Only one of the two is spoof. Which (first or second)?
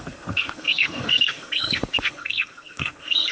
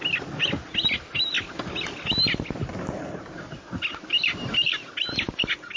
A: first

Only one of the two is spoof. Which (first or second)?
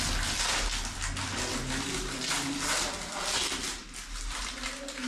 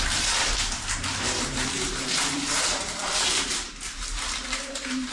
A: second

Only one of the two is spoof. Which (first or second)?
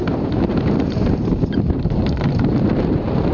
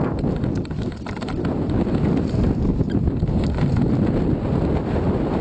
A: first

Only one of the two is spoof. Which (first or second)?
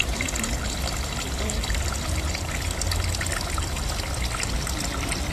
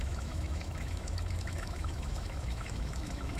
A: second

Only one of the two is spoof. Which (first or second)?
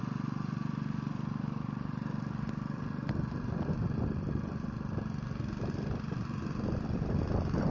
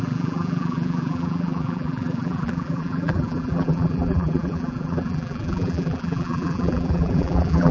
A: second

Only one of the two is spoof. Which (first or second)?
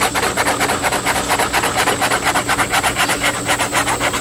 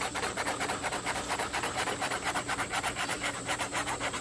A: second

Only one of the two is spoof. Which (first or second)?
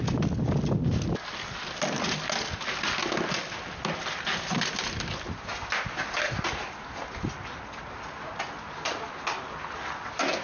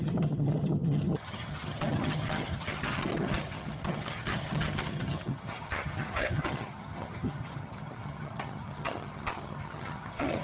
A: second